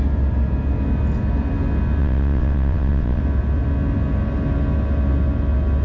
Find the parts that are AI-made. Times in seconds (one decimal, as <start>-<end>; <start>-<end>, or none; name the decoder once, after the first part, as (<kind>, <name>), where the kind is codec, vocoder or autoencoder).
2.0-3.2 (vocoder, WaveNeXt)